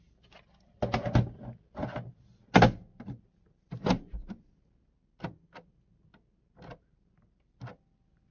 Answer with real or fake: real